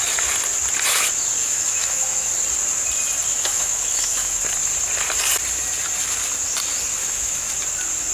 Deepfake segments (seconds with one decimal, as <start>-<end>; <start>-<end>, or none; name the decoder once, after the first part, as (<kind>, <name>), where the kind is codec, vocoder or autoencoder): 1.4-2.3 (autoencoder, DAC-VAE); 3.3-4.4; 7.0-7.5